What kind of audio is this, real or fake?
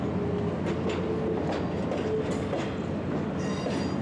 real